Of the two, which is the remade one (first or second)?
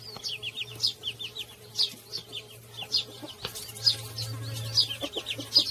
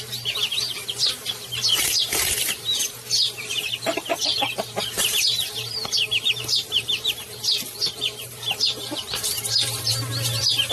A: second